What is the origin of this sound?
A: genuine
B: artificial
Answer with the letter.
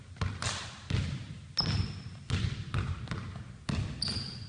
A